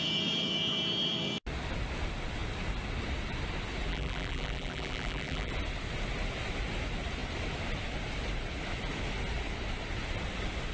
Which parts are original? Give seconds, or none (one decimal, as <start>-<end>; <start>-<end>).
0.0-3.9; 5.5-10.7